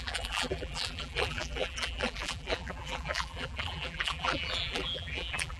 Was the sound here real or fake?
fake